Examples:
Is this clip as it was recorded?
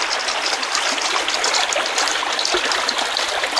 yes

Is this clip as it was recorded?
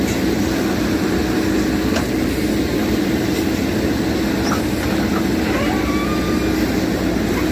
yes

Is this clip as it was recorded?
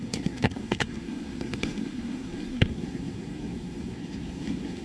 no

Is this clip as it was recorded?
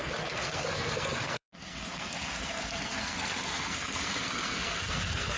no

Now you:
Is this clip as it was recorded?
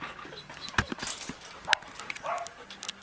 yes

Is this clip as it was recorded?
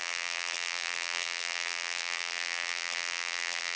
no